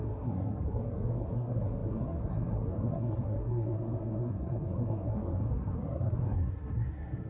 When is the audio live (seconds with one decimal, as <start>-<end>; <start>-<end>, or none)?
none